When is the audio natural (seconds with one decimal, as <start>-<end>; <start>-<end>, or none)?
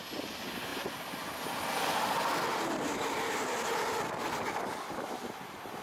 0.0-5.8